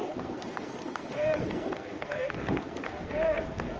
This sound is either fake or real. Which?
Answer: fake